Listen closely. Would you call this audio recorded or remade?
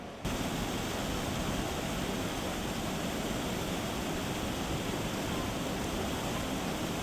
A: recorded